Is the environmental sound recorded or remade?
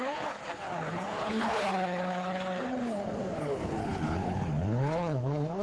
remade